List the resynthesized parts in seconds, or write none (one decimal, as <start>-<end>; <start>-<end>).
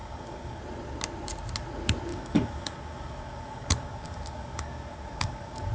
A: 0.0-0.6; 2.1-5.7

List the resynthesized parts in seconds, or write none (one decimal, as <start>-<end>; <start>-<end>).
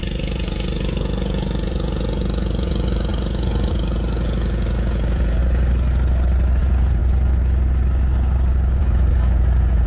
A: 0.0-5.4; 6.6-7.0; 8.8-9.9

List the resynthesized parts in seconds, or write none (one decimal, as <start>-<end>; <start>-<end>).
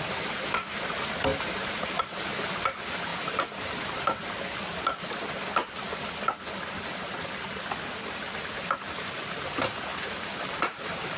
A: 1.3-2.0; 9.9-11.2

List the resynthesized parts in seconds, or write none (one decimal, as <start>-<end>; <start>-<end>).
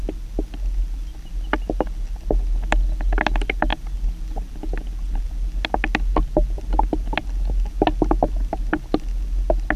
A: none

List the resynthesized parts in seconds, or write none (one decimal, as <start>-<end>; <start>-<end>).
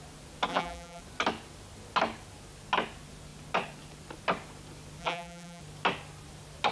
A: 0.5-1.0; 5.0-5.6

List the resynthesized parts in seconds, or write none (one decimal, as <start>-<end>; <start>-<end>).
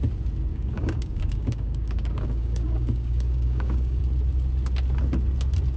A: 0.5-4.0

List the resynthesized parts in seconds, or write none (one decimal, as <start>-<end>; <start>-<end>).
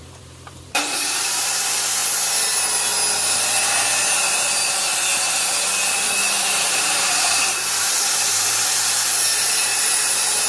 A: 0.0-2.0; 6.0-10.5